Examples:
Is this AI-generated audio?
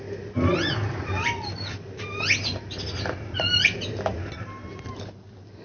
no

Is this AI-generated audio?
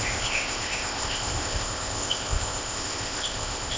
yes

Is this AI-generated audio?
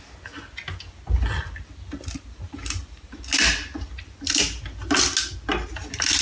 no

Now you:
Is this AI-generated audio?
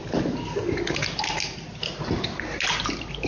no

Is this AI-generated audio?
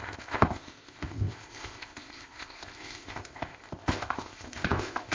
yes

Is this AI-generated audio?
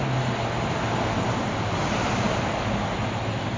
no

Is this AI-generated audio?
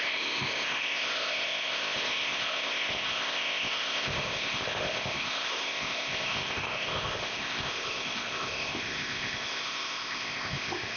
yes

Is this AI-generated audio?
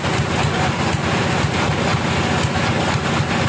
no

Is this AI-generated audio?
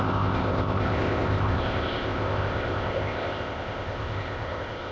yes